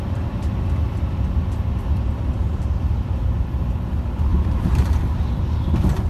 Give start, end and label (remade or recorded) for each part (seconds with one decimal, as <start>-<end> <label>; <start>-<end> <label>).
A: 0.0-2.4 recorded; 2.4-3.6 remade; 3.6-4.3 recorded; 4.3-4.8 remade; 4.8-6.1 recorded

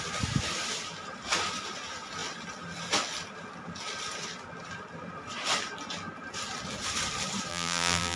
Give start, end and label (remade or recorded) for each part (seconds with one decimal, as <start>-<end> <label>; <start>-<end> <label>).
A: 0.0-7.5 recorded; 7.5-8.2 remade

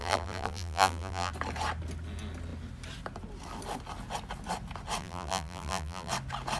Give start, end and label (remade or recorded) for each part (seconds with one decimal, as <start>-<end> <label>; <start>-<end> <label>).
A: 0.0-1.3 remade; 1.3-5.0 recorded; 5.0-6.1 remade; 6.1-6.6 recorded